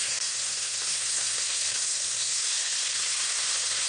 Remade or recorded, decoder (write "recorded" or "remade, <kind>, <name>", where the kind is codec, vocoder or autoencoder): remade, codec, SNAC